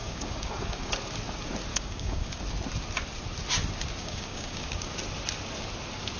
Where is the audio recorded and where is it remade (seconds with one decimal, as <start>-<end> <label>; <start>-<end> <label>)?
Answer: 0.0-0.9 remade; 0.9-1.7 recorded; 1.7-2.4 remade; 2.4-4.0 recorded; 4.0-4.9 remade; 4.9-6.2 recorded